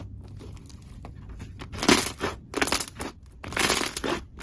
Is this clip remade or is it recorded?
recorded